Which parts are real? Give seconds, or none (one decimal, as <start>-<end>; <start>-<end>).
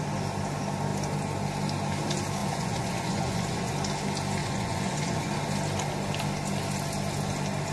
0.0-2.4; 3.7-4.4; 5.3-7.7